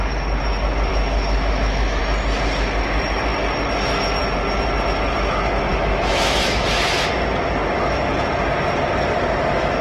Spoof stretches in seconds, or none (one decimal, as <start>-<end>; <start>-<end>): 0.9-2.0; 5.7-6.6